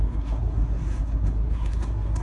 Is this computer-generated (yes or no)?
yes